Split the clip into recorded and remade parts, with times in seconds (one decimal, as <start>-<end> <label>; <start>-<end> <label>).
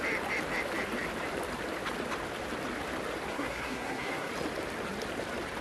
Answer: 0.0-3.3 recorded; 3.3-4.3 remade; 4.3-5.6 recorded